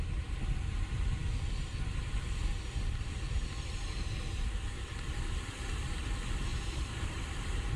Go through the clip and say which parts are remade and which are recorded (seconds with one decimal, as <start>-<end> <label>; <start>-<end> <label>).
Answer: 0.0-6.5 recorded; 6.5-7.3 remade; 7.3-7.8 recorded